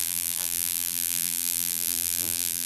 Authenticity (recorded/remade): remade